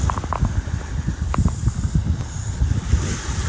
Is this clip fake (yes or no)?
no